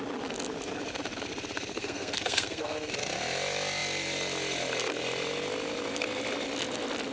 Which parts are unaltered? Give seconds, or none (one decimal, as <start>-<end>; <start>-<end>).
0.0-1.7; 2.9-7.1